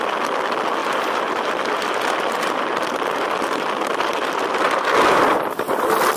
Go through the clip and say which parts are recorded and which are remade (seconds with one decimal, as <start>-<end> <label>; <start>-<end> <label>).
0.0-0.8 recorded; 0.8-4.5 remade; 4.5-6.2 recorded